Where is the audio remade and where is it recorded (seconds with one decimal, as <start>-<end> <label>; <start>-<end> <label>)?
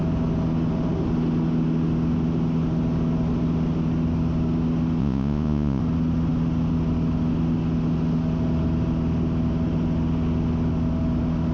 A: 0.0-5.0 recorded; 5.0-5.8 remade; 5.8-11.5 recorded